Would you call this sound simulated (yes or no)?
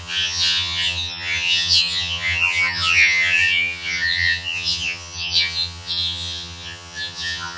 yes